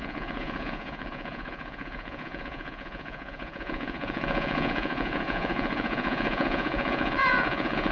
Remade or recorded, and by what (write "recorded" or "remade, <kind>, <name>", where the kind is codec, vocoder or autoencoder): remade, vocoder, Vocos